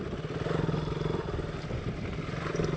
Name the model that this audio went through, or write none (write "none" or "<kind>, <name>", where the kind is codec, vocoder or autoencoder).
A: none